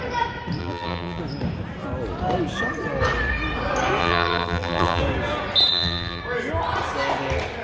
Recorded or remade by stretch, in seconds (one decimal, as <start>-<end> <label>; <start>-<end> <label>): 0.0-0.6 recorded; 0.6-1.2 remade; 1.2-4.0 recorded; 4.0-5.0 remade; 5.0-5.7 recorded; 5.7-6.2 remade; 6.2-7.6 recorded